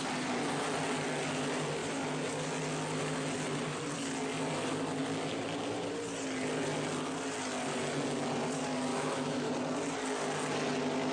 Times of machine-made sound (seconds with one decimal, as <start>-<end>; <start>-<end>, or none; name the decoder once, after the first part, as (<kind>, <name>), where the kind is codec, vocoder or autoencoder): 8.9-9.5 (autoencoder, DAC-VAE)